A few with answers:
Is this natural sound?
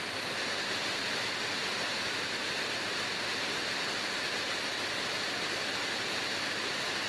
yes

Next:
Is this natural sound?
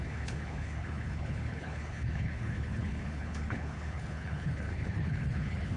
no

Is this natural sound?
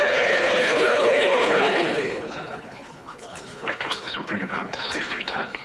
no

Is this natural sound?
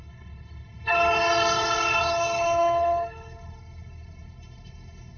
no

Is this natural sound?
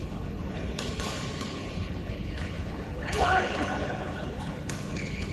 no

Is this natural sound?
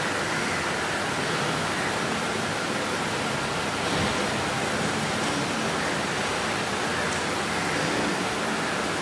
yes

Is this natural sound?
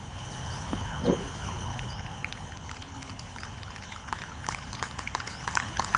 no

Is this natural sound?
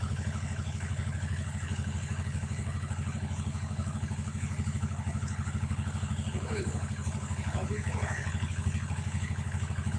no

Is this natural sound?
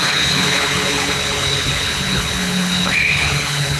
no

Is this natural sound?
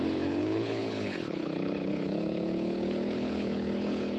no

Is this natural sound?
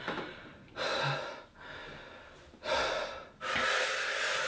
yes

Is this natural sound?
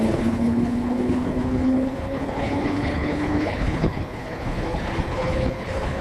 no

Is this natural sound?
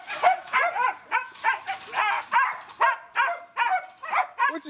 yes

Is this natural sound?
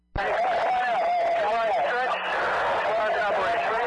yes